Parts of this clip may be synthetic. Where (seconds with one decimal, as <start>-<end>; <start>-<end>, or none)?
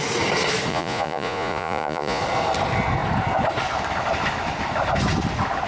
0.7-2.2